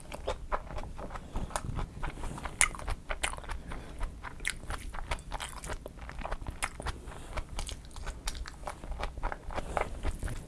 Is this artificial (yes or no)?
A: no